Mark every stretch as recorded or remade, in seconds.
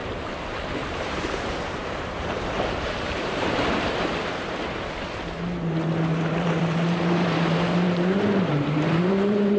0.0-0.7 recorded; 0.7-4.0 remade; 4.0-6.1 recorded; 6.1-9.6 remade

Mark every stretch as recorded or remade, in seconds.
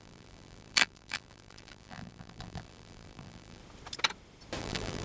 0.0-3.6 remade; 3.6-4.6 recorded; 4.6-5.0 remade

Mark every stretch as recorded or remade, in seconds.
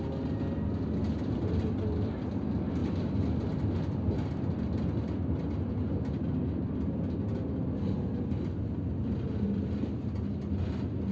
0.0-11.1 recorded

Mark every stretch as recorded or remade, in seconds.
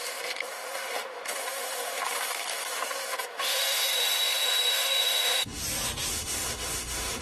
0.0-5.6 remade; 5.6-6.1 recorded; 6.1-7.2 remade